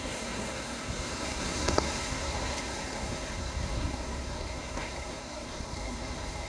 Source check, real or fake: fake